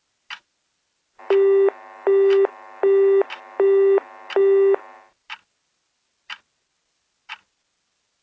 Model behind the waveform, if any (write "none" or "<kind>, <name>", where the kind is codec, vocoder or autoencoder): none